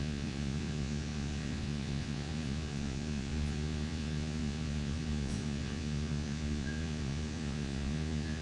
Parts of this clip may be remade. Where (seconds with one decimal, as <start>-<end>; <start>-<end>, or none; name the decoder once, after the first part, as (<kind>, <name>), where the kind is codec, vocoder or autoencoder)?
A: 0.0-8.4 (vocoder, Vocos)